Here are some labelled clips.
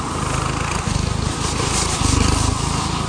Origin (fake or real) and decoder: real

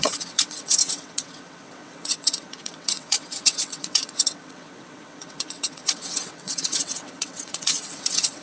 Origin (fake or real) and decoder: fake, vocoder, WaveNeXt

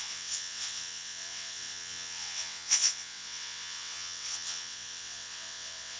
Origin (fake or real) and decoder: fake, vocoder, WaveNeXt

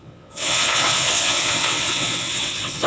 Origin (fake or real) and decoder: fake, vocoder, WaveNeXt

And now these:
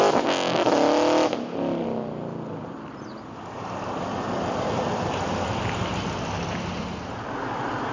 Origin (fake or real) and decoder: real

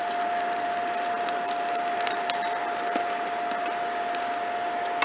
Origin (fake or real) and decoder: real